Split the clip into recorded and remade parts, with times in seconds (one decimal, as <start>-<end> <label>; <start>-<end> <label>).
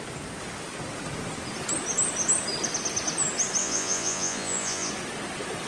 0.0-3.6 recorded; 3.6-4.9 remade; 4.9-5.7 recorded